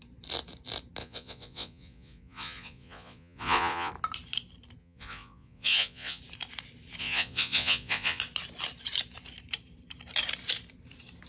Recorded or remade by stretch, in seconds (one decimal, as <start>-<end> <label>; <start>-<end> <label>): 0.0-1.0 recorded; 1.0-3.9 remade; 3.9-4.8 recorded; 4.8-6.2 remade; 6.2-7.0 recorded; 7.0-8.2 remade; 8.2-11.3 recorded